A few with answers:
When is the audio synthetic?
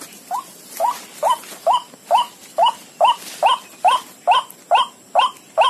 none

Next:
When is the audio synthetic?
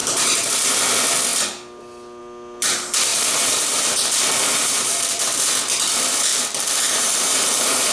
0.0-0.7 (vocoder, BigVGAN v2); 3.1-5.4; 6.3-7.9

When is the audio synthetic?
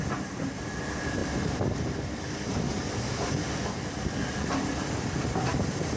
5.5-6.0 (vocoder, BigVGAN v2)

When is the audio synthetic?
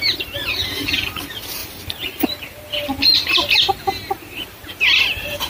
1.6-2.3 (vocoder, BigVGAN v2)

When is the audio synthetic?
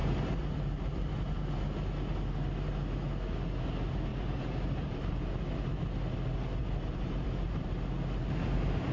4.1-5.3 (vocoder, BigVGAN v2); 6.6-7.9